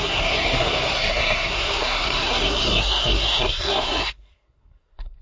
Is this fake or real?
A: fake